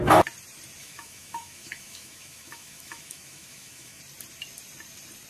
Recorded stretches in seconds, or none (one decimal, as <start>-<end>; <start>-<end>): 0.0-0.8; 4.0-5.3